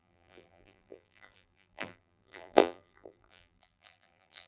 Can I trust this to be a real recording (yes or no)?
no